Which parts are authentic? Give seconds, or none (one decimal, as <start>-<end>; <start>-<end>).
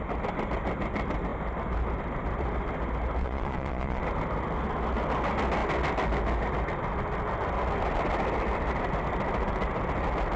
0.0-3.2; 4.0-10.4